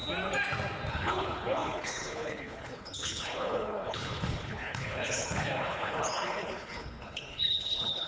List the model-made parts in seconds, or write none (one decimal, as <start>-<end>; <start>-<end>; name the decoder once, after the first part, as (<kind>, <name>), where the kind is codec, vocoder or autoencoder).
0.9-8.1 (codec, HILCodec)

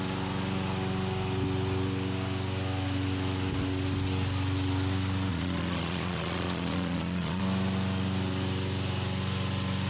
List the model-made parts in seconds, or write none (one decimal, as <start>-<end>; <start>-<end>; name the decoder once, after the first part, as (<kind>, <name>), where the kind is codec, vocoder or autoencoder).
5.3-7.4 (vocoder, Vocos)

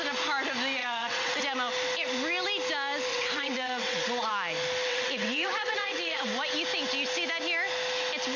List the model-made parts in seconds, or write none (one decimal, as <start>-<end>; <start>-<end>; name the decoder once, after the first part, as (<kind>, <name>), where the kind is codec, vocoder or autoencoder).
0.8-1.4 (vocoder, WaveNeXt); 3.1-4.3; 4.9-6.3

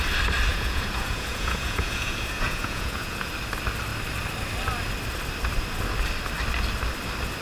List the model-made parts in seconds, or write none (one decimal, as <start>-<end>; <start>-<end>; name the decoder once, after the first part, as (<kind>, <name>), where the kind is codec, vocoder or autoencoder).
0.5-3.3 (vocoder, Vocos)

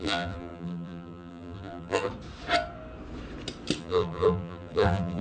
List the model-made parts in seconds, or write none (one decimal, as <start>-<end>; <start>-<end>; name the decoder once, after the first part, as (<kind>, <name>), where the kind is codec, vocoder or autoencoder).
0.0-2.1 (vocoder, BigVGAN v2); 3.8-5.2